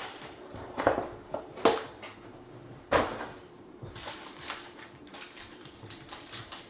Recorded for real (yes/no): no